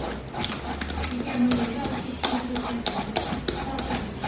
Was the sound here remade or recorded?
recorded